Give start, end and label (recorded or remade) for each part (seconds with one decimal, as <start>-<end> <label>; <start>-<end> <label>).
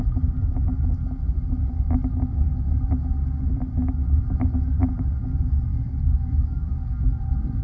0.0-5.7 recorded; 5.7-7.0 remade; 7.0-7.6 recorded